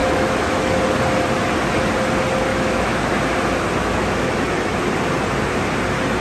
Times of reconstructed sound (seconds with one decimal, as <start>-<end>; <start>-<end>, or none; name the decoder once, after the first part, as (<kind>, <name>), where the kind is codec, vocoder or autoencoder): 0.0-0.8 (autoencoder, DAC-VAE); 2.5-3.1; 3.8-4.8